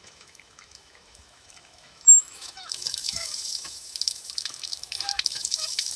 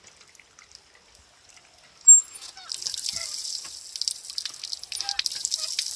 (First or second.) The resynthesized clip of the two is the first